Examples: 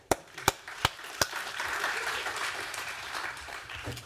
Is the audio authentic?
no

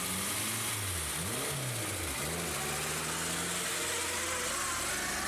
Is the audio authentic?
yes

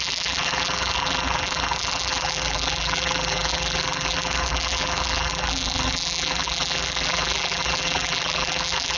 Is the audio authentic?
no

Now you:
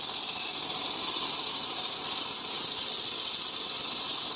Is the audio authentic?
yes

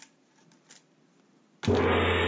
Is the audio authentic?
yes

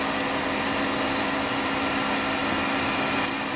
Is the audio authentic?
yes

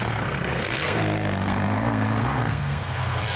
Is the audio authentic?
no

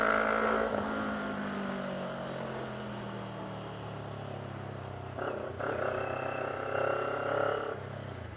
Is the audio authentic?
yes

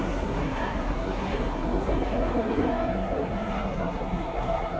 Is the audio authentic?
no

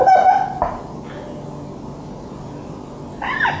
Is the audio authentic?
yes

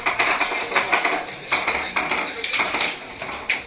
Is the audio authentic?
no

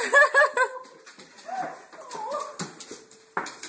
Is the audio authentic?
yes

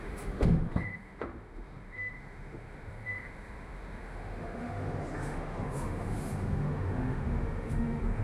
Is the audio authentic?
no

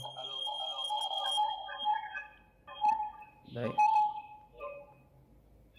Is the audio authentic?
yes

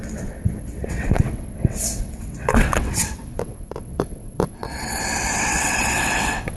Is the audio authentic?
no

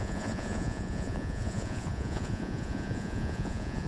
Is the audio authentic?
no